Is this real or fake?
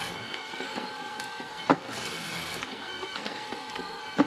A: fake